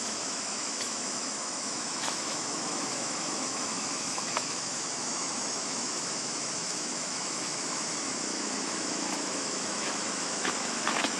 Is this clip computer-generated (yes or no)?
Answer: yes